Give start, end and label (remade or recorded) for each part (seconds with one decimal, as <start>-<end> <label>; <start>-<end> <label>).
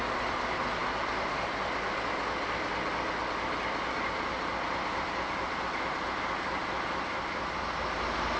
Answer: 0.0-8.4 recorded